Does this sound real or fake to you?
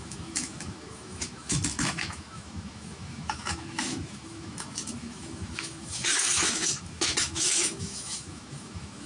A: fake